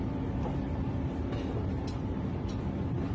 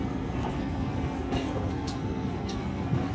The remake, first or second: second